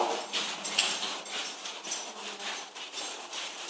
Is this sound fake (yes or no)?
no